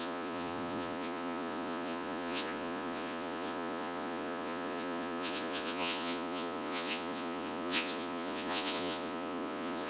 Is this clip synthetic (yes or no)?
yes